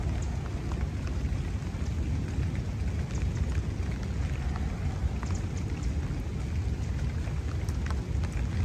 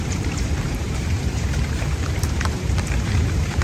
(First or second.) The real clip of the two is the first